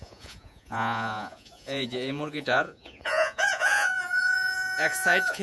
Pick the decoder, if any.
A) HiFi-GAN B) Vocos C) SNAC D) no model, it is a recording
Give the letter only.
B